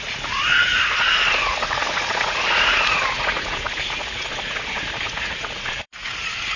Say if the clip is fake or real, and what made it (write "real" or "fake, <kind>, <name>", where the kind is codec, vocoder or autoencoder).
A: fake, vocoder, Vocos